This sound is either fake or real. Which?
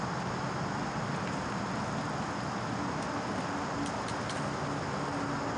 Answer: real